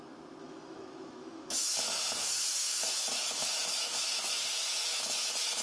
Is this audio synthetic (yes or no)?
yes